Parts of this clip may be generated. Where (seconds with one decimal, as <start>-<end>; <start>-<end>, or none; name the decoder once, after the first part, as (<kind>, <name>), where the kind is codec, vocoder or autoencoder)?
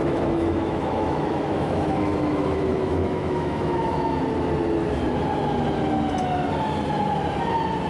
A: 0.0-4.2 (autoencoder, DAC-VAE)